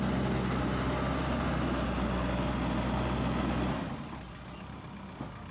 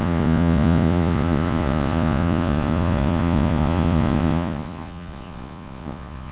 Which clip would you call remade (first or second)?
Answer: second